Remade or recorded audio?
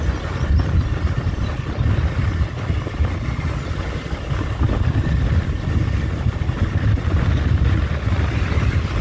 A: recorded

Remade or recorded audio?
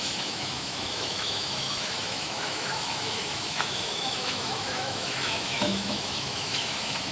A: remade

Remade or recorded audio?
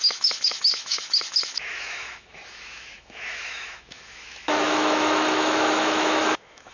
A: remade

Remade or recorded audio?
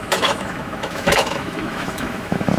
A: remade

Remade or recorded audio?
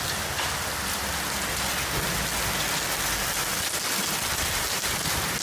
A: recorded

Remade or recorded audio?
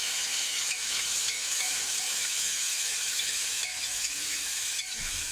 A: remade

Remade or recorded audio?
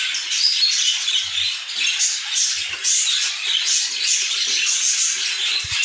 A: recorded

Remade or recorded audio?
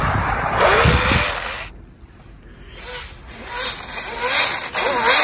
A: recorded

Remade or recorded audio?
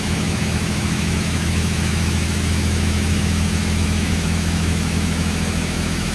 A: remade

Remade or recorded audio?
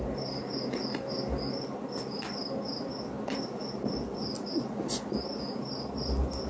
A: recorded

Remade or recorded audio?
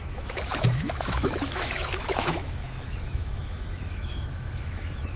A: remade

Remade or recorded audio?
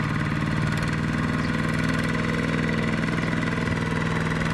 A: recorded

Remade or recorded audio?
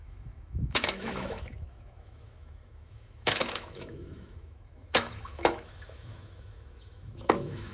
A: remade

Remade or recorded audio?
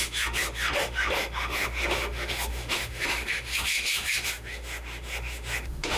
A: remade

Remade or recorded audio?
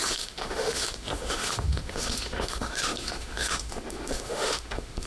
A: remade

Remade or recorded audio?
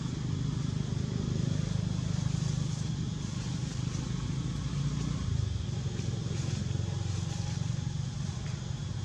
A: recorded